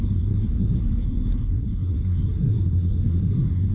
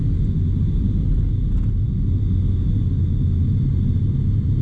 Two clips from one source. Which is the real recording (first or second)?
second